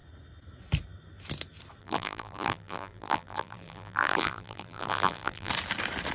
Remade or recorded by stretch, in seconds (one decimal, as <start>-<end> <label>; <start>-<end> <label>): 0.0-1.8 recorded; 1.8-5.5 remade; 5.5-6.1 recorded